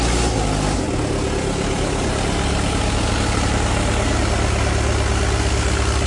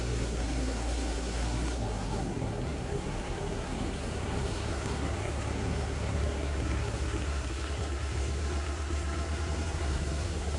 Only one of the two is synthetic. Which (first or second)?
second